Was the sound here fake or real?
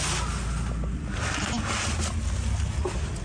real